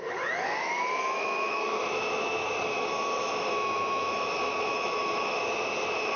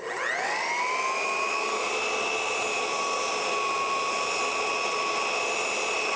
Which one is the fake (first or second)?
first